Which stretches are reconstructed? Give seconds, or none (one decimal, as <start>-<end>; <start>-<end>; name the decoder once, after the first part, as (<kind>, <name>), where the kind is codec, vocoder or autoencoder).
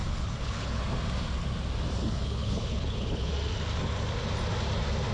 0.0-0.8 (codec, HILCodec); 2.2-3.3